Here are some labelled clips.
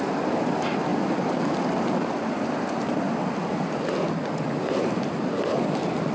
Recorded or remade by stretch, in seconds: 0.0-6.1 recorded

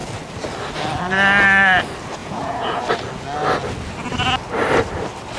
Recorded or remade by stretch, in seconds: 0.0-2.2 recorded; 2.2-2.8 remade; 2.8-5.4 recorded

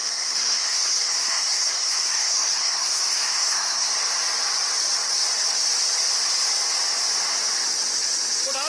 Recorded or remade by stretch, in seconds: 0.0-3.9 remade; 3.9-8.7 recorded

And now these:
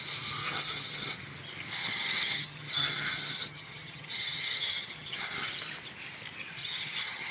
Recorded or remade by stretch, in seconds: 0.0-0.4 recorded; 0.4-1.2 remade; 1.2-1.8 recorded; 1.8-5.6 remade; 5.6-6.6 recorded; 6.6-7.3 remade